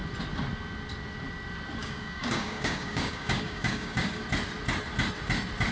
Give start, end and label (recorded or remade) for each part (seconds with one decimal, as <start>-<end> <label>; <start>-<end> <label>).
0.0-1.8 recorded; 1.8-4.2 remade; 4.2-5.7 recorded